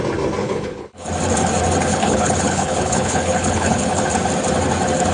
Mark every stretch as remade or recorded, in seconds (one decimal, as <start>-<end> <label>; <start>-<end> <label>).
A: 0.0-0.4 recorded; 0.4-1.1 remade; 1.1-1.9 recorded; 1.9-4.0 remade; 4.0-5.1 recorded